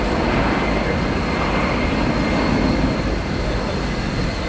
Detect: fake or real real